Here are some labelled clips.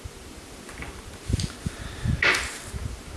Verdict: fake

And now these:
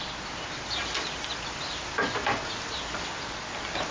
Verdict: real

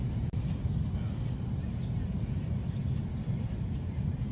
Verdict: real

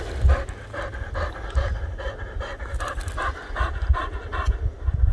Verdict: real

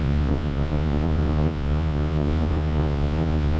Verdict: fake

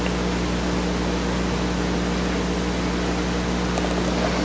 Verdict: real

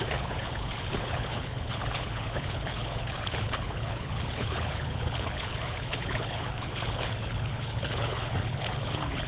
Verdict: fake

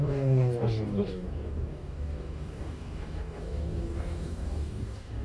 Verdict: fake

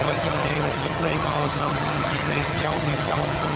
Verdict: fake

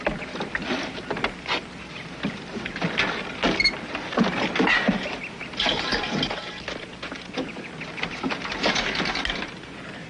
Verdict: real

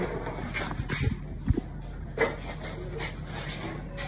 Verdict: real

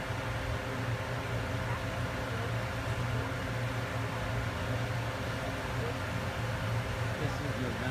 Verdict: real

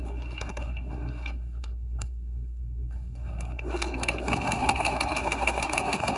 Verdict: fake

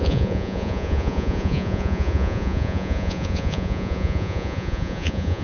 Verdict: fake